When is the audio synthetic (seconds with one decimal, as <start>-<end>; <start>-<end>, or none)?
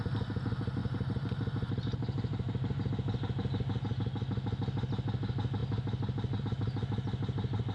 0.8-2.9